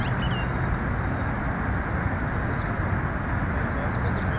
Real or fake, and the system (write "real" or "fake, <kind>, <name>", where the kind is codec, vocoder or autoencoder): real